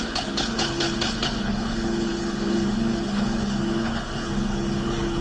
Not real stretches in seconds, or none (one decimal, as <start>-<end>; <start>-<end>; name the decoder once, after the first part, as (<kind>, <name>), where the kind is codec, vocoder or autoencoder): 0.0-5.2 (codec, HILCodec)

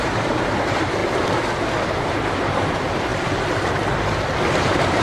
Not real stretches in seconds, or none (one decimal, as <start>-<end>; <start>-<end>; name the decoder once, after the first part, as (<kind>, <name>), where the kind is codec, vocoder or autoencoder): 0.0-1.0 (vocoder, BigVGAN v2); 1.9-3.1; 4.5-5.0

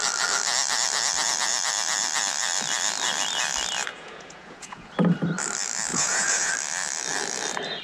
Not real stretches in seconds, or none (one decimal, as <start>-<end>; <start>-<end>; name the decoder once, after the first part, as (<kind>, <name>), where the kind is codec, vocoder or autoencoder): 3.9-4.9 (vocoder, Vocos); 5.9-6.5

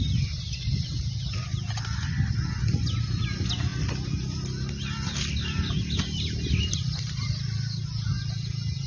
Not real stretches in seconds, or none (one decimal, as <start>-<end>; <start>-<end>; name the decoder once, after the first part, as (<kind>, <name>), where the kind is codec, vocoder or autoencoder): none

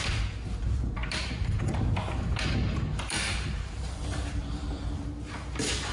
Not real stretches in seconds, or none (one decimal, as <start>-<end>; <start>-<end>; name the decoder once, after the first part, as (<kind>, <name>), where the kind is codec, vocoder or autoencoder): 0.0-5.9 (vocoder, BigVGAN v2)